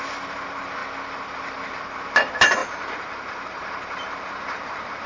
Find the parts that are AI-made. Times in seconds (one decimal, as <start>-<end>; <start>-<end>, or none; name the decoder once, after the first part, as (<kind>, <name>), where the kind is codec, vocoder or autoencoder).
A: 0.8-1.8 (vocoder, BigVGAN v2); 2.6-3.6